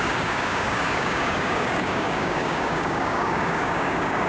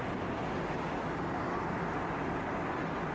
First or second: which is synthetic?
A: first